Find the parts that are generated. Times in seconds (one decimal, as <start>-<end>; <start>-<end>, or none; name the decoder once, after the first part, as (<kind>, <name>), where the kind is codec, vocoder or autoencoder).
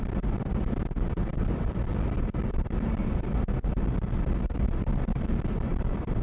none